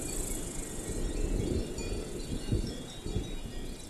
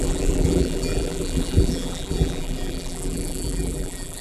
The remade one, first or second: second